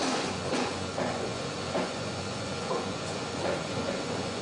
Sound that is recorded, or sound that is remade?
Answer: remade